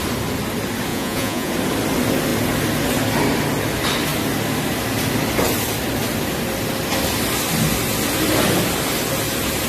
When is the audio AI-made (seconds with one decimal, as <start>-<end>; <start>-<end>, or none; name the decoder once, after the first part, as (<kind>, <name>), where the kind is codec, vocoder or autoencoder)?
0.9-1.5 (vocoder, Vocos)